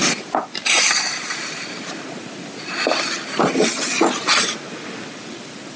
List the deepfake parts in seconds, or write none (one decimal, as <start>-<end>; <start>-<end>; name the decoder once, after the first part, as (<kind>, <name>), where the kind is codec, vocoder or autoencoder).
0.0-2.8 (vocoder, BigVGAN v2)

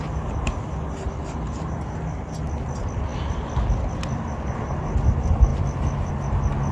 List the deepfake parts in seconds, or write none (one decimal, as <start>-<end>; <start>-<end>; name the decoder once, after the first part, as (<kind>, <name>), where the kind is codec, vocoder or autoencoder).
none